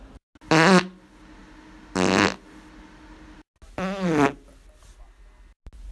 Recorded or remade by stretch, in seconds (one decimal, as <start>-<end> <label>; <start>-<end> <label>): 0.0-5.9 recorded